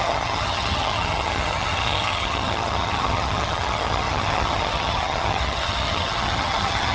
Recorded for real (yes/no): no